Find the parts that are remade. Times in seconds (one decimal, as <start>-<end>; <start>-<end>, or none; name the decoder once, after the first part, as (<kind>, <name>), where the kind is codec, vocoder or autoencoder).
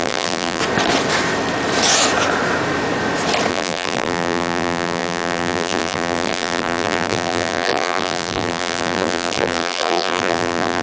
0.0-0.6 (vocoder, BigVGAN v2); 3.5-10.8